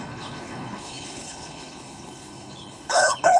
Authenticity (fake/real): fake